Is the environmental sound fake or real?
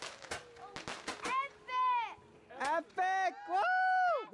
real